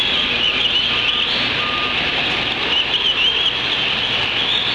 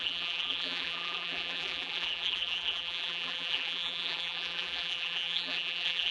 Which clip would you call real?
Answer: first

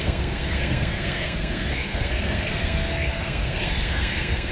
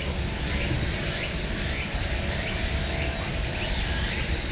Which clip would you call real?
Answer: second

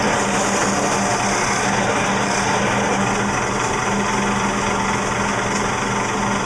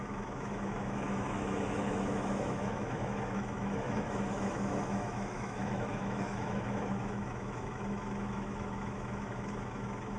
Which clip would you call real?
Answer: first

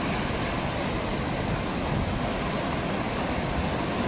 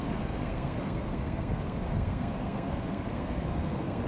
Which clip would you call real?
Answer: first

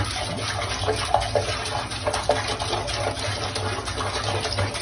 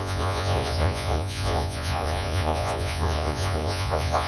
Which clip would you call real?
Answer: first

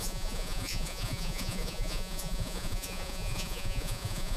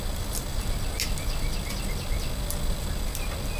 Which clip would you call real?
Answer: second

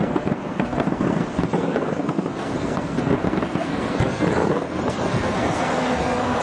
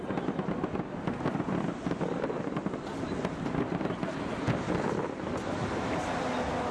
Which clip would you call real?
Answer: second